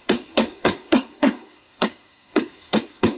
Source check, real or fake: fake